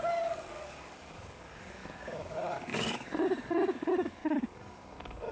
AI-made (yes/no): yes